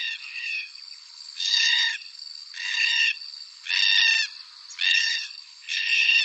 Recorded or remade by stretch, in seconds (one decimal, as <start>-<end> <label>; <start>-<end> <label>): 0.0-3.7 remade; 3.7-4.9 recorded; 4.9-6.2 remade